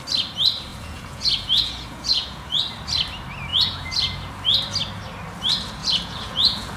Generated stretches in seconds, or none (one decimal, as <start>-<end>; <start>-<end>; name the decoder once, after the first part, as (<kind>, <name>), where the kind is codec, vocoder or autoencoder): 0.7-2.6 (vocoder, Vocos); 3.5-4.3; 5.8-6.8